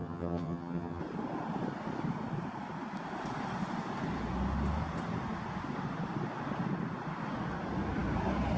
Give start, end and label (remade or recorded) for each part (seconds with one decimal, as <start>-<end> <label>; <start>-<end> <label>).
0.0-1.0 remade; 1.0-8.6 recorded